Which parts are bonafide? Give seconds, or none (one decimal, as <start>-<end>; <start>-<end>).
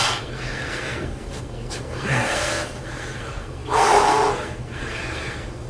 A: none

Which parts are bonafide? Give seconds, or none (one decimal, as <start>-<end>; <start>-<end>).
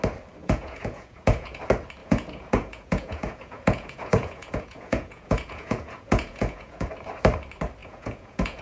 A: 0.0-0.4; 1.6-2.0; 6.9-7.8